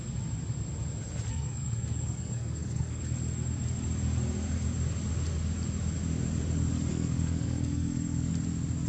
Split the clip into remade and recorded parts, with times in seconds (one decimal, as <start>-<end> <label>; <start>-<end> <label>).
0.0-1.3 recorded; 1.3-3.0 remade; 3.0-6.9 recorded; 6.9-8.3 remade; 8.3-8.9 recorded